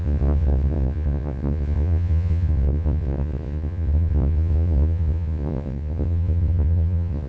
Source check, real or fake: fake